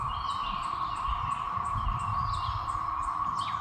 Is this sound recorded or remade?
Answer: recorded